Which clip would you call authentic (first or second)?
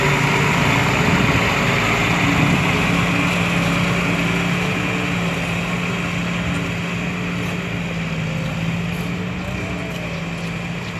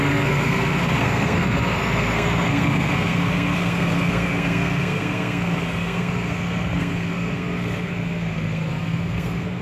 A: first